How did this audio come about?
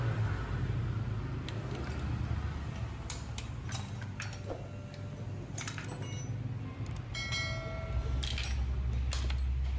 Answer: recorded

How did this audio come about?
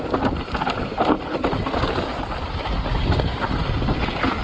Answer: recorded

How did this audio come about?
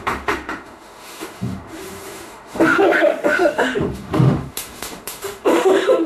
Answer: remade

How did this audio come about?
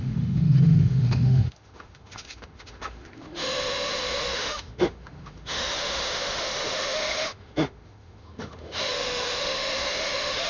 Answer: remade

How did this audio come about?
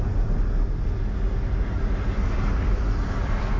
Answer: recorded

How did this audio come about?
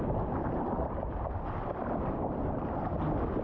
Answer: recorded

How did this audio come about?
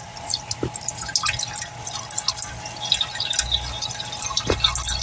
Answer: recorded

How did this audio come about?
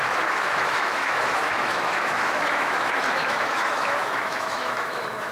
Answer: remade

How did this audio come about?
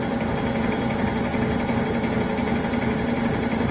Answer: recorded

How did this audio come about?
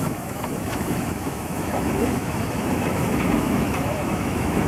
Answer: remade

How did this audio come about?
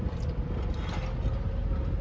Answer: recorded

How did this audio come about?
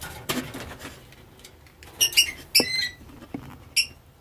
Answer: recorded